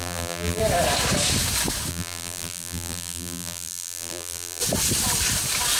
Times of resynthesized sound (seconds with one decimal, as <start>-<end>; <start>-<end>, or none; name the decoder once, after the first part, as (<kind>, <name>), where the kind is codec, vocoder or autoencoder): 0.0-0.6 (vocoder, BigVGAN v2); 1.9-4.6